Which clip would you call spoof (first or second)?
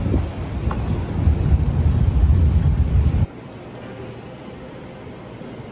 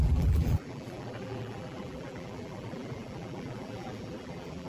second